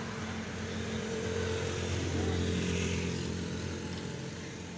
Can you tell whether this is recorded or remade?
recorded